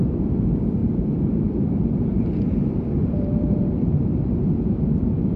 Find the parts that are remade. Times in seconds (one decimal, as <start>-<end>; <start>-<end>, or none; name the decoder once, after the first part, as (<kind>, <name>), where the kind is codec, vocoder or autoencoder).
0.8-1.8 (vocoder, BigVGAN v2); 3.0-3.6

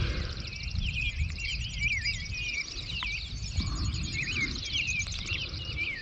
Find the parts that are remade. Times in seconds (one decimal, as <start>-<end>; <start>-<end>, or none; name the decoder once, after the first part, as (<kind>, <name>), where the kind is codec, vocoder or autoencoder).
0.0-1.5 (vocoder, BigVGAN v2); 2.7-6.0

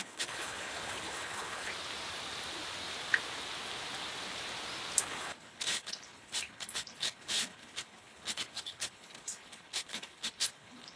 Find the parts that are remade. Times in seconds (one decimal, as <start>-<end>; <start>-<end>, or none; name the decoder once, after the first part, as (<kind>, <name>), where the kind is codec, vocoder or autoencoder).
0.0-1.7 (codec, HILCodec); 5.0-11.0

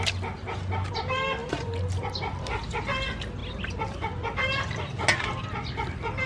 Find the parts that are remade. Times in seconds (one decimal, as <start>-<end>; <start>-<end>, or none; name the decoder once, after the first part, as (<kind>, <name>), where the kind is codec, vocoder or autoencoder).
none

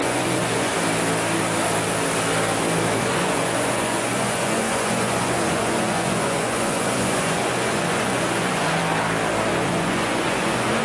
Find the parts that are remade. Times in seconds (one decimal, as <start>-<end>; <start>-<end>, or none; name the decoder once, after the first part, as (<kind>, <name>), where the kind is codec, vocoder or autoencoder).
0.0-0.7 (vocoder, Vocos); 3.0-8.8; 9.5-10.8